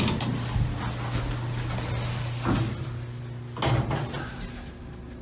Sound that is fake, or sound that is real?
real